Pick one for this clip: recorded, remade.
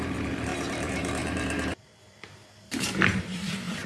remade